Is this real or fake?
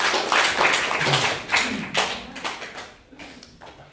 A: real